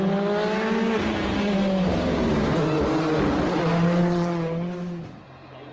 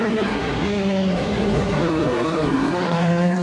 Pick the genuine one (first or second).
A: first